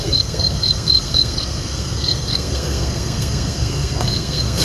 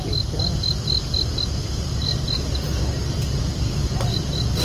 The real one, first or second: second